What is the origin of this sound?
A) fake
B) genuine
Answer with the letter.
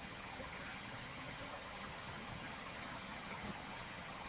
A